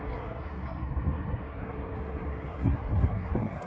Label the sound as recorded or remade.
remade